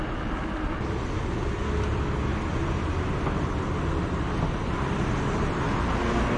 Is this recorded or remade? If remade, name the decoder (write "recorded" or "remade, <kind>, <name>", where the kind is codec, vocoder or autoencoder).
recorded